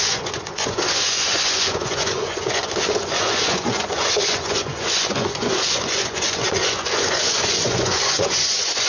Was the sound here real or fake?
fake